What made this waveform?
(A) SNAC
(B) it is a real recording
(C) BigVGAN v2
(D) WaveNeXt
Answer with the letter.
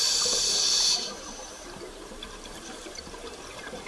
C